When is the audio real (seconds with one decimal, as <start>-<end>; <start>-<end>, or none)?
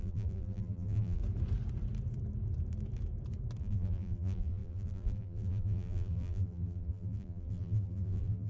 1.2-3.6